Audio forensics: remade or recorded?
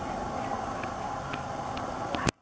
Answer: recorded